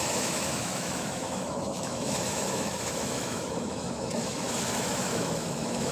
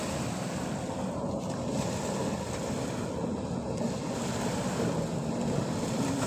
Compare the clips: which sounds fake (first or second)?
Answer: first